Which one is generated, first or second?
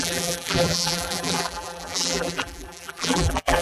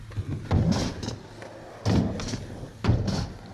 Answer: first